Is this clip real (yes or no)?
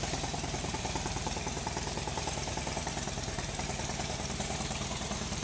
no